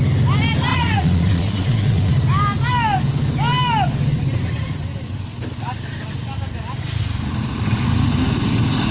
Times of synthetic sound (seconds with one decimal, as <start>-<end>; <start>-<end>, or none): 0.7-2.1